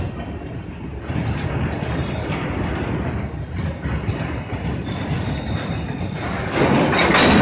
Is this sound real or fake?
real